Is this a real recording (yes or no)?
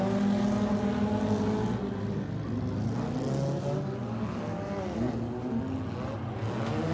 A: yes